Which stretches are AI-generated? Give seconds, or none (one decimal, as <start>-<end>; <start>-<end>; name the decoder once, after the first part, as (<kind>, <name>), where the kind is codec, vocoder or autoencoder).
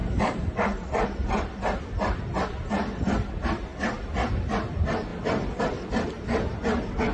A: 5.1-5.6 (vocoder, BigVGAN v2)